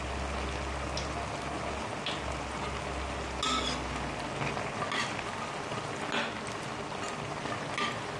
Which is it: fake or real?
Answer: real